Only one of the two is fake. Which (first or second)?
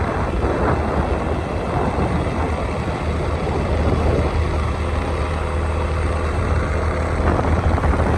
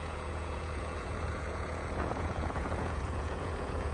second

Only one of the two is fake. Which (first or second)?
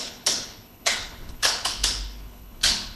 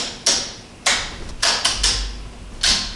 first